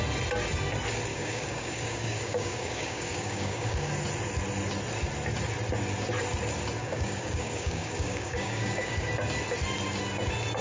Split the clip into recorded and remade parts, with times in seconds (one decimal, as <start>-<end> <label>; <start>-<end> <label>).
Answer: 0.0-1.1 recorded; 1.1-3.9 remade; 3.9-6.8 recorded; 6.8-9.1 remade; 9.1-10.6 recorded